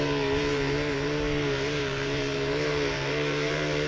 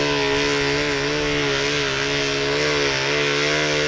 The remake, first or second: first